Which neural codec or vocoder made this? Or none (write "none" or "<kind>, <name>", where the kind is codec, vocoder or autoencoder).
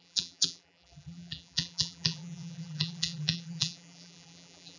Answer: vocoder, BigVGAN v2